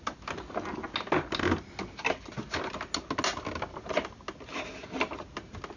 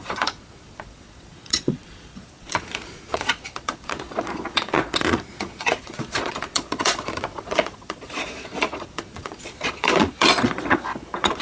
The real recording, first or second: first